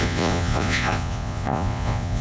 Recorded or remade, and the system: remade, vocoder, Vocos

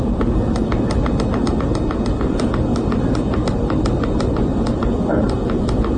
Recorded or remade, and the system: recorded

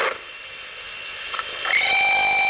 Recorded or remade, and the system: recorded